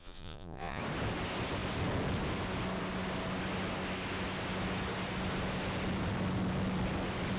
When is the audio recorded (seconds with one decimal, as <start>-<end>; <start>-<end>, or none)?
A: 0.8-7.4